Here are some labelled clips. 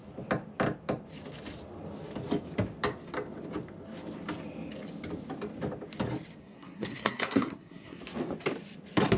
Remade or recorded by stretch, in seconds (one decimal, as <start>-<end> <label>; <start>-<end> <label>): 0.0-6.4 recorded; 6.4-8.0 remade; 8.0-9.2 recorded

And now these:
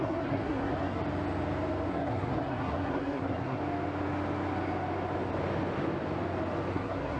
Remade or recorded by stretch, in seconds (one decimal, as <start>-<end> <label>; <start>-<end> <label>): 0.0-1.0 remade; 1.0-1.9 recorded; 1.9-3.6 remade; 3.6-6.7 recorded; 6.7-7.2 remade

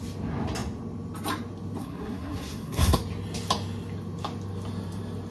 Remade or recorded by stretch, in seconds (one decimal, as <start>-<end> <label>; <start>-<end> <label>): 0.0-1.8 recorded; 1.8-3.0 remade; 3.0-5.3 recorded

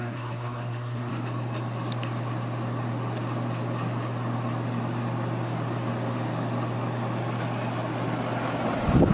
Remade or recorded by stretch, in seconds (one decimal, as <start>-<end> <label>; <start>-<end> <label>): 0.0-1.1 remade; 1.1-9.1 recorded